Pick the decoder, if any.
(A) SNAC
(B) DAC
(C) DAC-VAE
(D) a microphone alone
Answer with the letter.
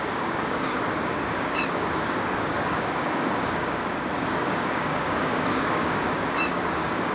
B